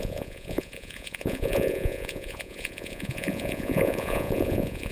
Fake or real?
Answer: fake